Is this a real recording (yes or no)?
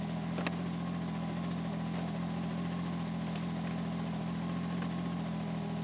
yes